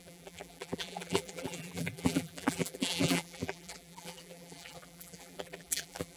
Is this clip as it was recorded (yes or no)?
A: no